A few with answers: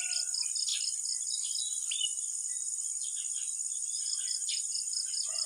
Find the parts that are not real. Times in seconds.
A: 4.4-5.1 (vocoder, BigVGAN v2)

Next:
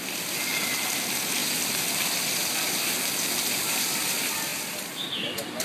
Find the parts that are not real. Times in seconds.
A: none

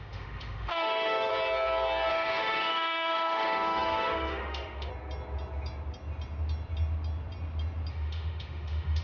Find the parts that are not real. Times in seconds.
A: 0.0-1.3 (autoencoder, DAC-VAE); 2.1-4.9; 7.9-9.0

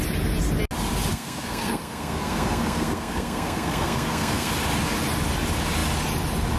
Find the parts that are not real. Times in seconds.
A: 1.1-4.5 (codec, SNAC)

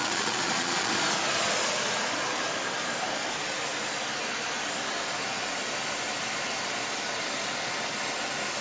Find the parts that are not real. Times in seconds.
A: 0.0-0.9 (vocoder, Vocos)

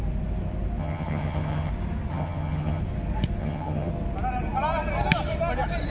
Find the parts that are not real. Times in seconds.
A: 0.8-1.7 (vocoder, HiFi-GAN); 2.1-2.8; 3.4-3.9

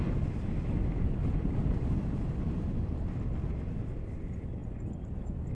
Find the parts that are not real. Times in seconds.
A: 1.2-2.2 (vocoder, BigVGAN v2)